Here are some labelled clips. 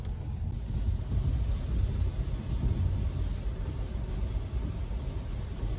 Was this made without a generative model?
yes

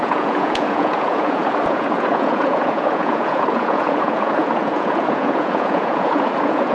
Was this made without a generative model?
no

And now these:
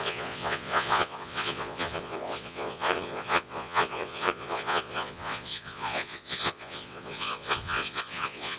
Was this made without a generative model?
no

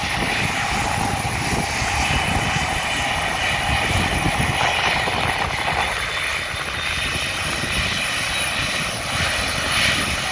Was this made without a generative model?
yes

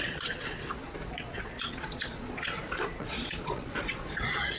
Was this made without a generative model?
no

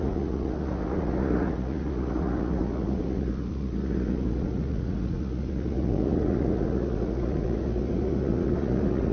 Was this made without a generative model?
no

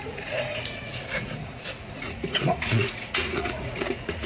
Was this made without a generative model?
no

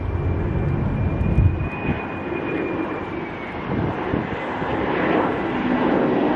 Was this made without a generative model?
yes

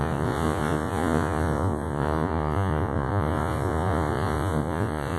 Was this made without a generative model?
no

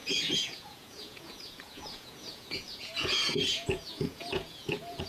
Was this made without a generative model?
no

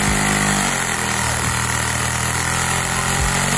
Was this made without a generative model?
yes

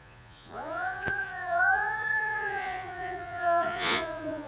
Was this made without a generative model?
no